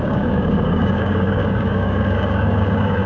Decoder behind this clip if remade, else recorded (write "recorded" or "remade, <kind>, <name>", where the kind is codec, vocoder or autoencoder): remade, codec, DAC